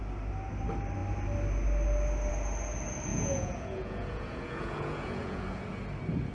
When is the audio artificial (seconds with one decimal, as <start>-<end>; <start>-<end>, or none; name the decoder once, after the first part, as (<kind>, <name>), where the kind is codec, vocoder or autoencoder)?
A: 3.1-5.6 (vocoder, Vocos)